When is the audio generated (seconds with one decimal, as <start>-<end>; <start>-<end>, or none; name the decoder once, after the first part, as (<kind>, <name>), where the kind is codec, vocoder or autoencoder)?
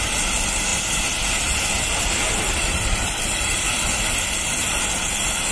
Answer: none